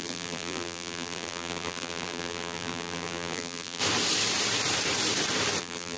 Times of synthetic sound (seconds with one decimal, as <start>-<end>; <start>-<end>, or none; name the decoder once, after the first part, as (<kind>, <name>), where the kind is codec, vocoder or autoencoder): 0.0-3.8 (vocoder, BigVGAN v2); 5.6-6.0